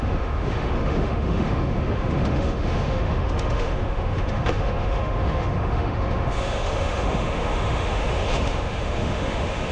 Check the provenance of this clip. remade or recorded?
remade